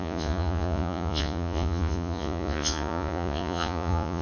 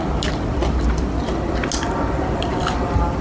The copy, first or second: first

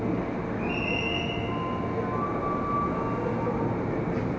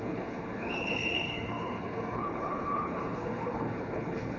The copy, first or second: second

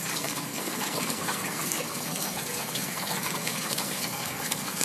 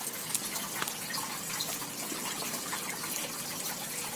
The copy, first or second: first